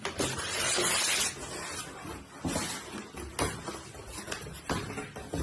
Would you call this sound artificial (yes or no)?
no